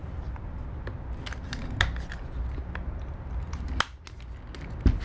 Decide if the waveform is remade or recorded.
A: recorded